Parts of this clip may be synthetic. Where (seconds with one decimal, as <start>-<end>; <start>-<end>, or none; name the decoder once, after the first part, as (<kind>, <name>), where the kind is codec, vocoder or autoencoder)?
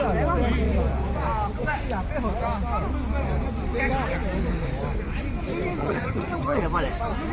5.8-6.6 (vocoder, HiFi-GAN)